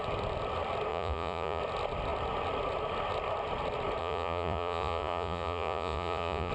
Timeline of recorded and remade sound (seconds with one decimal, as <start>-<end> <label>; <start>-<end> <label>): 0.0-0.9 recorded; 0.9-1.6 remade; 1.6-4.0 recorded; 4.0-6.5 remade